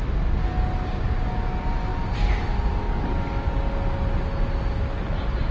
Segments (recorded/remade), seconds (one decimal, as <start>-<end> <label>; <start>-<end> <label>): 0.0-5.5 recorded

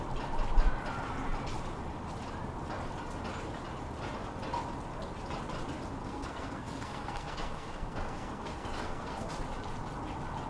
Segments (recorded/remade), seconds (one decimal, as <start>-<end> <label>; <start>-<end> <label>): 0.0-6.0 recorded; 6.0-9.3 remade; 9.3-10.5 recorded

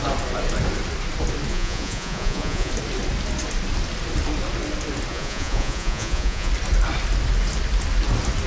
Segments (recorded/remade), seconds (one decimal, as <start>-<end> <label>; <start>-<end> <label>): 0.0-1.5 recorded; 1.5-2.7 remade; 2.7-5.1 recorded; 5.1-6.5 remade; 6.5-8.5 recorded

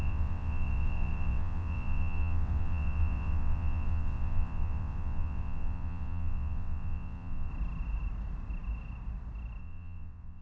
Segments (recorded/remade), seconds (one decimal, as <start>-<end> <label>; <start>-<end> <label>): 0.0-7.5 remade; 7.5-9.6 recorded; 9.6-10.4 remade

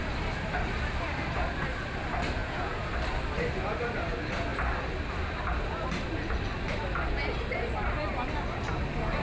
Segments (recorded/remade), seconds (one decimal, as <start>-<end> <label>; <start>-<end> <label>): 0.0-2.4 recorded; 2.4-2.9 remade; 2.9-9.2 recorded

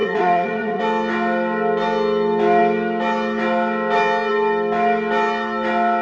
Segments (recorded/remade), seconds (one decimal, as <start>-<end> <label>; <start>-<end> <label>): 0.0-0.8 remade; 0.8-6.0 recorded

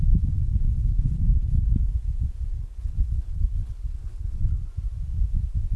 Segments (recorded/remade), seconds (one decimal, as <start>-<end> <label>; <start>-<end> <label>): 0.0-0.4 recorded; 0.4-1.9 remade; 1.9-2.5 recorded; 2.5-4.7 remade; 4.7-5.8 recorded